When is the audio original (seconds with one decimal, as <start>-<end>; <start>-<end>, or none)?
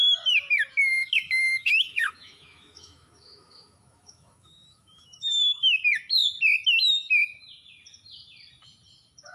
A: 0.0-0.8; 5.8-9.3